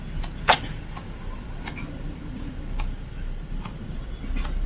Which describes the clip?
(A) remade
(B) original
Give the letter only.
B